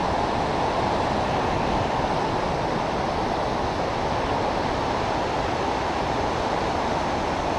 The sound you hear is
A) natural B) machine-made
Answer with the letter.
A